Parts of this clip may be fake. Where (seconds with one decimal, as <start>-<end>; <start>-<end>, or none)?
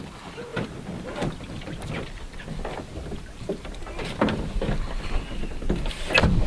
none